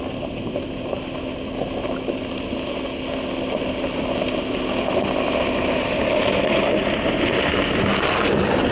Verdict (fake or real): real